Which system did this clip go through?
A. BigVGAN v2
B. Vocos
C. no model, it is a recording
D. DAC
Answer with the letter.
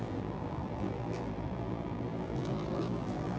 A